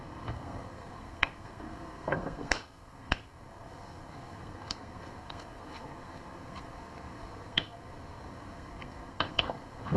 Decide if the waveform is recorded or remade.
remade